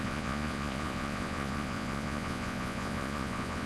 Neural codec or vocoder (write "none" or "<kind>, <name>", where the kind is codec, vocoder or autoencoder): vocoder, Vocos